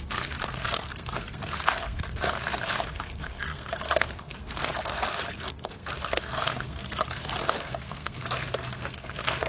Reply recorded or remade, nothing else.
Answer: remade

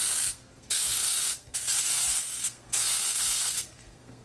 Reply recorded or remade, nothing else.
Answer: remade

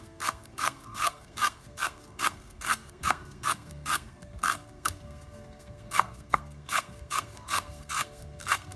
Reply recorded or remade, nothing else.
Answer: remade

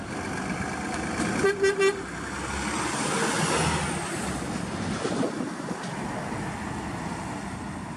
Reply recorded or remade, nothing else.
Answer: recorded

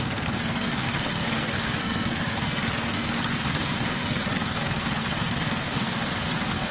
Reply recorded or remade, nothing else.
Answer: remade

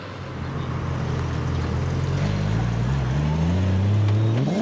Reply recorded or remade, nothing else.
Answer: recorded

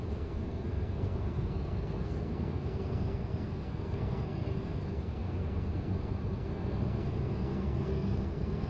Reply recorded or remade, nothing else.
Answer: remade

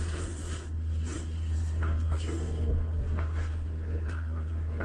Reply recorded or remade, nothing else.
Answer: remade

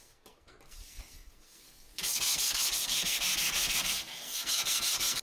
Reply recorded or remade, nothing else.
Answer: remade